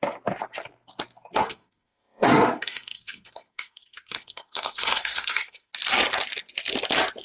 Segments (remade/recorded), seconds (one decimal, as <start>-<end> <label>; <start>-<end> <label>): 0.0-1.4 recorded; 1.4-5.7 remade; 5.7-7.2 recorded